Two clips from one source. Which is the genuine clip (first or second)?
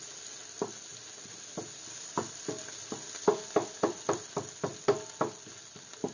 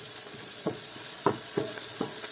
first